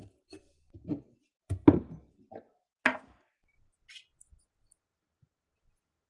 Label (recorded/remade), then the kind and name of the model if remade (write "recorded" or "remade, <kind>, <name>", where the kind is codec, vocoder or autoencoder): recorded